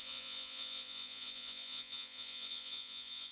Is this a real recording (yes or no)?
no